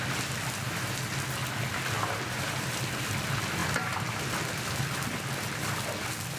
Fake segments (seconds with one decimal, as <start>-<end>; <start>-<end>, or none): 3.6-4.8